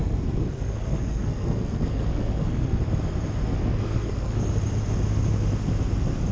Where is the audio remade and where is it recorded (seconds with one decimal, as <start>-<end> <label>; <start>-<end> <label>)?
0.0-2.8 remade; 2.8-3.6 recorded; 3.6-4.5 remade; 4.5-6.3 recorded